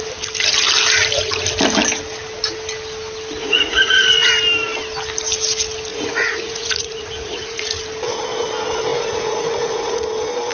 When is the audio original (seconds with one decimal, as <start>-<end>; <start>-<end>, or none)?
0.0-3.4; 4.3-5.9; 7.8-8.9; 10.0-10.5